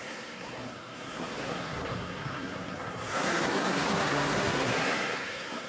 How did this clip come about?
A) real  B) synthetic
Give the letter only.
B